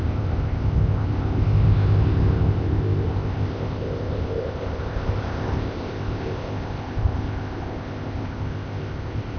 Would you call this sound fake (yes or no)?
yes